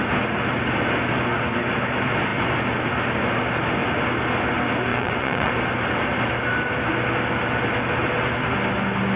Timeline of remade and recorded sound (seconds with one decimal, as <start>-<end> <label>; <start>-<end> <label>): 0.0-4.9 recorded; 4.9-5.5 remade; 5.5-9.2 recorded